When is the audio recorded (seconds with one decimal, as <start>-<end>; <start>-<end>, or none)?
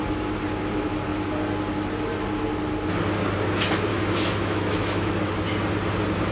0.0-3.9; 5.3-6.3